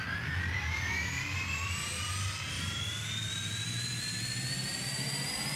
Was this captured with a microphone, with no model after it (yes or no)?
no